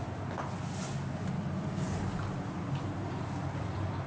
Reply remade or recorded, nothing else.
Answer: recorded